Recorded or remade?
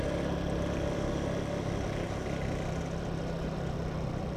recorded